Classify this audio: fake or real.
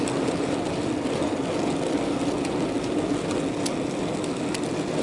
real